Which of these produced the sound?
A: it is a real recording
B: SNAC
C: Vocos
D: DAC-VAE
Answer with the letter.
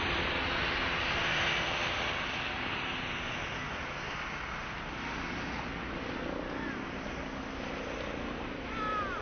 A